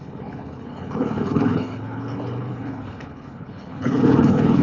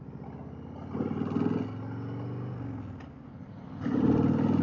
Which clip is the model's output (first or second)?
first